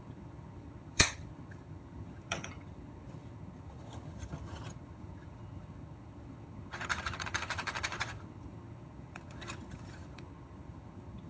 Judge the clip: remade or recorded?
remade